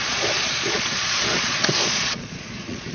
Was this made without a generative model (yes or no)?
no